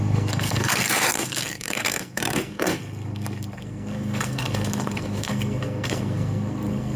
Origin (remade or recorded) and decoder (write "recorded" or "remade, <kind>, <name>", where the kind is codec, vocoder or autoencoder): remade, codec, SNAC